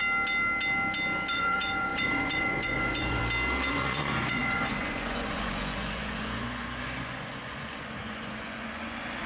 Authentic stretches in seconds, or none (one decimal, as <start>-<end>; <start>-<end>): 0.0-1.3; 3.2-3.7